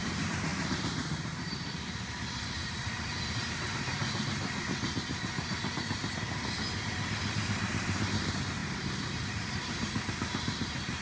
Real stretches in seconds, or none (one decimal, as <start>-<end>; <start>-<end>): 4.0-7.1